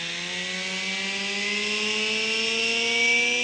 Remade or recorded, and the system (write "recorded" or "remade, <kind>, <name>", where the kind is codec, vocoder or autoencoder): recorded